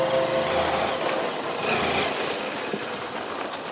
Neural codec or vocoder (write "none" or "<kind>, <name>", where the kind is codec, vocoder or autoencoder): none